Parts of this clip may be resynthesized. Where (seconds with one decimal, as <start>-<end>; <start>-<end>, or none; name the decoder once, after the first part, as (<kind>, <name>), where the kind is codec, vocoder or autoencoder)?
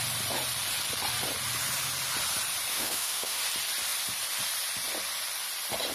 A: 2.7-3.4 (autoencoder, DAC-VAE)